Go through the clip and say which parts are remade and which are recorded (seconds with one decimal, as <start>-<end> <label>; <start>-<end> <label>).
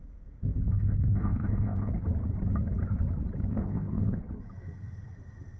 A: 0.0-1.9 remade; 1.9-3.5 recorded; 3.5-4.2 remade; 4.2-5.6 recorded